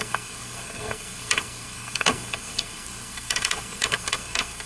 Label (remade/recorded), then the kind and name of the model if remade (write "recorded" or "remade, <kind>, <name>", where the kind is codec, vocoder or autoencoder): remade, codec, SNAC